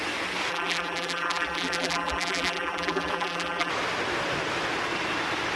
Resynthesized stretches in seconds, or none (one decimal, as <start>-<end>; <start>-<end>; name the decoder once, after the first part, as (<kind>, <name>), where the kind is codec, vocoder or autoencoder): 0.5-3.7 (vocoder, BigVGAN v2)